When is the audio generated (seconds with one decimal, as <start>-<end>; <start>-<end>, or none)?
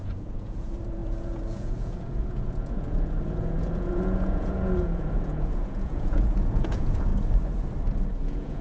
0.0-7.1; 8.2-8.6